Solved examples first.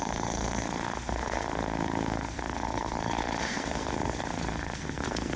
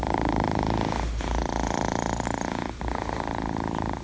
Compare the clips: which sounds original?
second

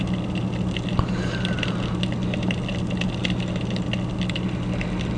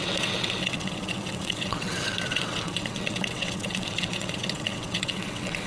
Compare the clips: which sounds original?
first